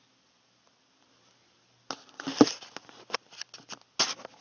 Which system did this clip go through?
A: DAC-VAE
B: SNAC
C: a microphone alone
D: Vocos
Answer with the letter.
C